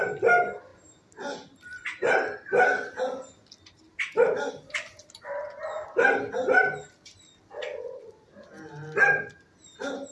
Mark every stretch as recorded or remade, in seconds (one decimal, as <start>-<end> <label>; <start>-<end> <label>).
0.0-10.1 recorded